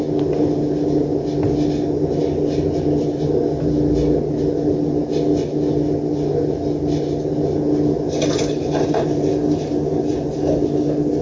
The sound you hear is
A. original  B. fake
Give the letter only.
A